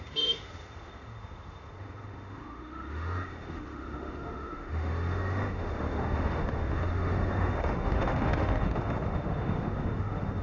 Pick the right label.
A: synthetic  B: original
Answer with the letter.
A